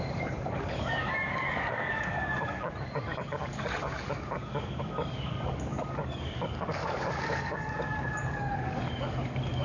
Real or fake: fake